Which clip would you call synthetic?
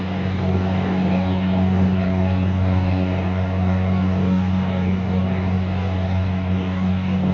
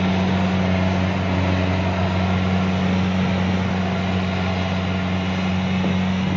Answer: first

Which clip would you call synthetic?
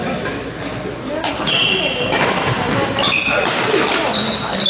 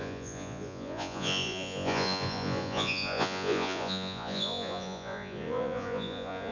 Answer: second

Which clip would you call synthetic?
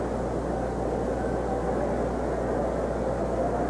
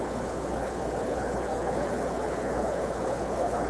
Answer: second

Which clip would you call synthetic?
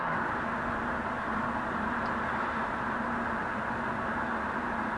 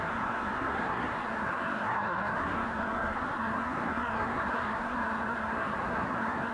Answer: second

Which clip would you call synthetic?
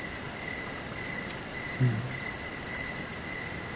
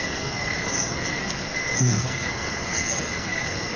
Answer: second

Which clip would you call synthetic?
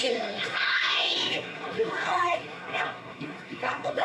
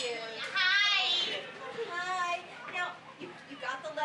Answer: first